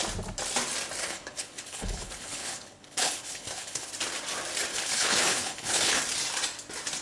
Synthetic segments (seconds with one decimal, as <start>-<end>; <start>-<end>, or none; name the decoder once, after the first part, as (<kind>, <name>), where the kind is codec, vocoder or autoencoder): 1.0-3.9 (codec, HILCodec); 4.7-6.0